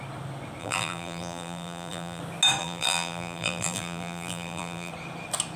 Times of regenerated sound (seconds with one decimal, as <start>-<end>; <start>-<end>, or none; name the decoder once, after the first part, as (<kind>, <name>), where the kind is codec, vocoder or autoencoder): 0.6-2.2 (vocoder, BigVGAN v2); 2.6-4.9